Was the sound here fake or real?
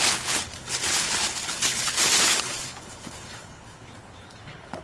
fake